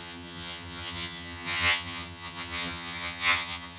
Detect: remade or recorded remade